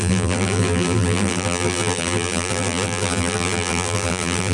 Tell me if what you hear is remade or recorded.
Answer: remade